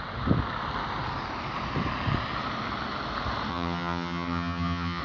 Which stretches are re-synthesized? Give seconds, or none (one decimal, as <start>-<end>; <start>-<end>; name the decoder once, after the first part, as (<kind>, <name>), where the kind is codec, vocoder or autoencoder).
3.5-5.0 (vocoder, HiFi-GAN)